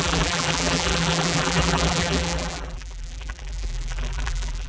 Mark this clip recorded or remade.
remade